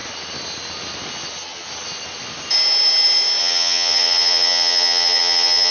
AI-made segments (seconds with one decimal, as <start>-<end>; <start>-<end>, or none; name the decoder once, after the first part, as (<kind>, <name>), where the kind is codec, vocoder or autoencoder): 3.4-5.7 (vocoder, HiFi-GAN)